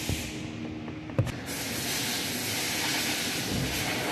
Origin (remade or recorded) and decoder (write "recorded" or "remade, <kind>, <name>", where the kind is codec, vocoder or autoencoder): recorded